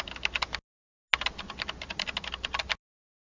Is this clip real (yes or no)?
yes